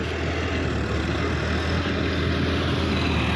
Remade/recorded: recorded